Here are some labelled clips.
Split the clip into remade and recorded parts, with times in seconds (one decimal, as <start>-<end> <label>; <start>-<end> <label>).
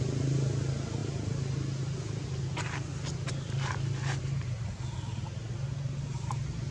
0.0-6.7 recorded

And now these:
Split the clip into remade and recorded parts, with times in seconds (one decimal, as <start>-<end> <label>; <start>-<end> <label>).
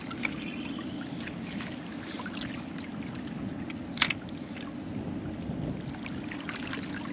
0.0-7.1 recorded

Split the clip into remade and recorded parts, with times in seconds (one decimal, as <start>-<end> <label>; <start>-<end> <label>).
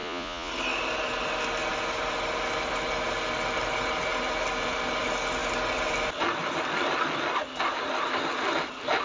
0.0-0.5 remade; 0.5-9.0 recorded